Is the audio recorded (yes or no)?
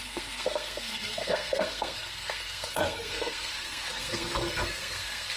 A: no